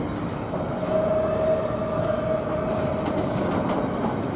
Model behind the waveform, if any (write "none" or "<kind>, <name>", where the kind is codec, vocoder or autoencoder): none